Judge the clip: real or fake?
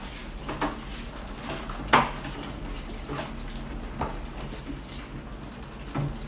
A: real